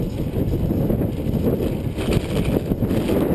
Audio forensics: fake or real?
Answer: real